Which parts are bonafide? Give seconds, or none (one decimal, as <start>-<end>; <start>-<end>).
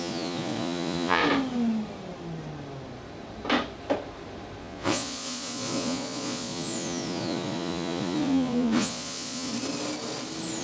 1.2-4.6; 9.5-10.6